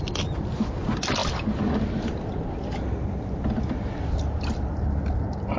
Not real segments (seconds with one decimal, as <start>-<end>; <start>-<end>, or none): none